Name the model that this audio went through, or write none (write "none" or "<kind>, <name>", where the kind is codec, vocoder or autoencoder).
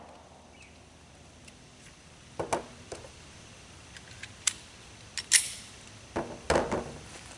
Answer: none